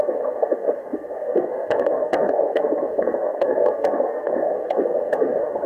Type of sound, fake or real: fake